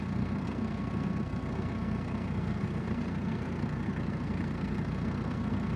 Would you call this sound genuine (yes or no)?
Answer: no